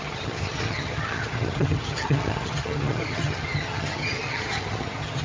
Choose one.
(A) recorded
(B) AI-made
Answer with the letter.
B